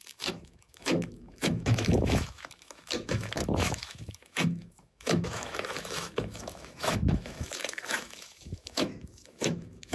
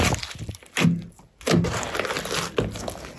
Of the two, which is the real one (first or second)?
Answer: second